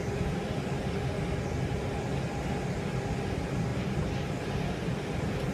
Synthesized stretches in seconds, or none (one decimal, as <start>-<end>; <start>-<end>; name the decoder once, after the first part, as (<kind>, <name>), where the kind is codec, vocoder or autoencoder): none